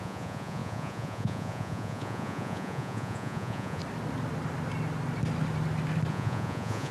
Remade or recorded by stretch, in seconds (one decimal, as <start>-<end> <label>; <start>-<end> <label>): 0.0-3.8 remade; 3.8-6.1 recorded; 6.1-6.9 remade